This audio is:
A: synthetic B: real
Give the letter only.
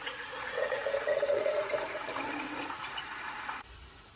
A